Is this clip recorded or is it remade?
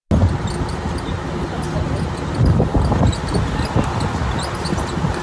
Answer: recorded